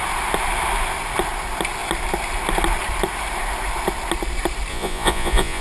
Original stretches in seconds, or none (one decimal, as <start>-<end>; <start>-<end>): 0.0-4.7